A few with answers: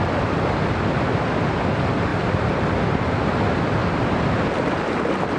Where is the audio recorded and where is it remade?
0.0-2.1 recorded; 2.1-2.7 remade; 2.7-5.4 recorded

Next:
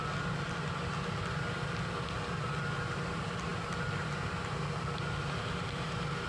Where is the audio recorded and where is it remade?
0.0-6.3 recorded

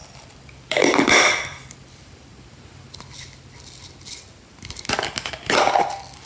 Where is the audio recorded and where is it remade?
0.0-2.3 remade; 2.3-6.3 recorded

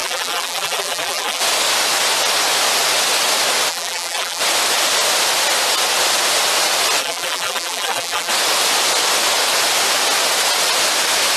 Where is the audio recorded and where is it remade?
0.0-1.4 remade; 1.4-3.7 recorded; 3.7-4.4 remade; 4.4-7.0 recorded; 7.0-8.3 remade; 8.3-11.4 recorded

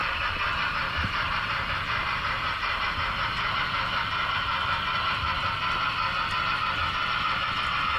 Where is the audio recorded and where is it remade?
0.0-3.0 remade; 3.0-8.0 recorded

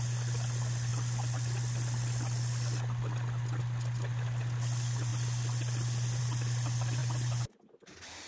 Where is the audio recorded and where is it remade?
0.0-7.0 recorded; 7.0-7.6 remade; 7.6-8.3 recorded

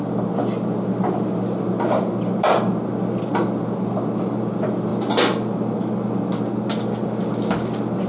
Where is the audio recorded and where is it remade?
0.0-8.1 recorded

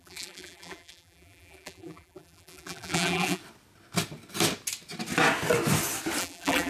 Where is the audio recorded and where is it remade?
0.0-3.4 remade; 3.4-6.2 recorded; 6.2-6.7 remade